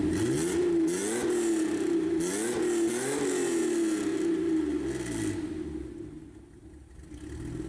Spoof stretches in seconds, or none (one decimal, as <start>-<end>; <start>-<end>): none